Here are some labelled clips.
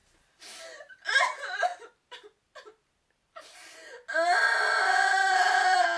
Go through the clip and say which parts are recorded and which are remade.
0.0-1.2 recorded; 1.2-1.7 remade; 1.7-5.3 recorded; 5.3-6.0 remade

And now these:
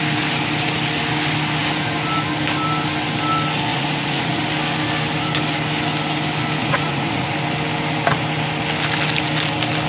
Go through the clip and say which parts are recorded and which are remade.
0.0-3.7 recorded; 3.7-4.4 remade; 4.4-6.6 recorded; 6.6-7.3 remade; 7.3-9.9 recorded

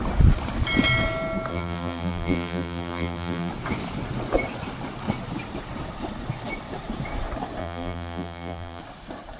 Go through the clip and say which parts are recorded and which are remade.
0.0-1.5 recorded; 1.5-3.5 remade; 3.5-7.6 recorded; 7.6-8.8 remade; 8.8-9.4 recorded

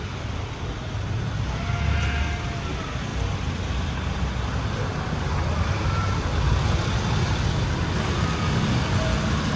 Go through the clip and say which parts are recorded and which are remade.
0.0-9.6 recorded

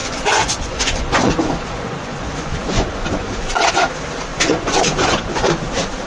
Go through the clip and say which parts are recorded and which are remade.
0.0-3.7 remade; 3.7-4.3 recorded; 4.3-5.5 remade; 5.5-6.1 recorded